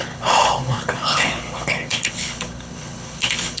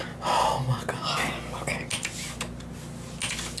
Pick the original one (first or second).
second